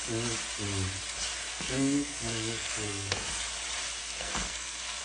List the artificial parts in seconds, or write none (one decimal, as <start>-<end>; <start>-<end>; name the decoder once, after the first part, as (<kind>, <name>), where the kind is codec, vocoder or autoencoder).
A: 1.5-3.3 (codec, SNAC); 4.0-5.0